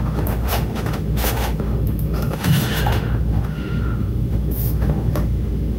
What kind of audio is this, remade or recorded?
remade